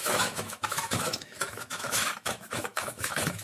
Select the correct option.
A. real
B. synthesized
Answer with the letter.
B